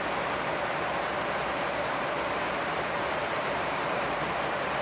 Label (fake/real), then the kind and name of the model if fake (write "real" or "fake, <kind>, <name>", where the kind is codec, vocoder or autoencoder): fake, vocoder, BigVGAN v2